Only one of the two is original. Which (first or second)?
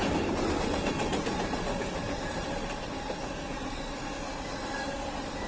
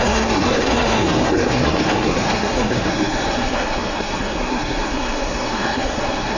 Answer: first